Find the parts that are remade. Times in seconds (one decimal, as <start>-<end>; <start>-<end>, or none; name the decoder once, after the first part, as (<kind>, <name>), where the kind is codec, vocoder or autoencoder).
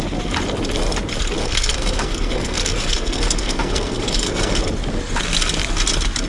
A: 1.4-4.6 (codec, SNAC)